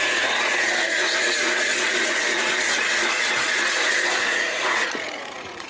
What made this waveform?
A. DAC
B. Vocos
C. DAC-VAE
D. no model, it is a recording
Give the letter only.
B